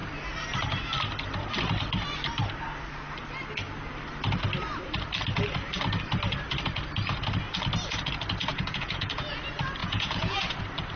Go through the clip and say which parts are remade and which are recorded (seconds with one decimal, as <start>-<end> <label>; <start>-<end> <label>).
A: 0.0-8.5 recorded; 8.5-9.4 remade; 9.4-9.8 recorded; 9.8-10.6 remade; 10.6-11.0 recorded